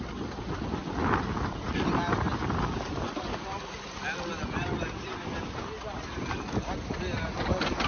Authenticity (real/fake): real